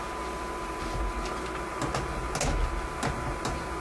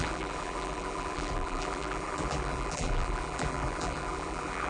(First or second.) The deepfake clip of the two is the second